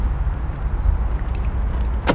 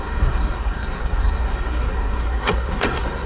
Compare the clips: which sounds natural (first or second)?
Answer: first